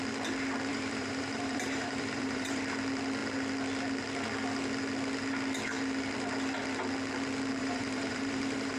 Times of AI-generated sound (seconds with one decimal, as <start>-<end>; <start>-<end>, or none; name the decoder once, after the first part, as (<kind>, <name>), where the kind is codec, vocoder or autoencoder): 0.7-2.6 (vocoder, BigVGAN v2); 7.6-8.8